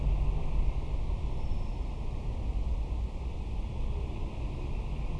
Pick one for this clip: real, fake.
real